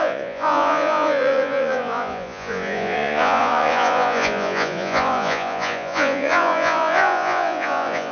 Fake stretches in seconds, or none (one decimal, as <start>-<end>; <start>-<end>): 0.0-8.1